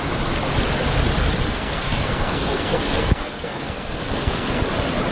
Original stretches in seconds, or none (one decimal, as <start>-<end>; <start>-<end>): 0.0-1.5; 4.6-5.1